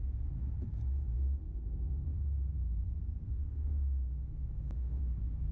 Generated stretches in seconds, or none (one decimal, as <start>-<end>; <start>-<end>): 3.4-5.0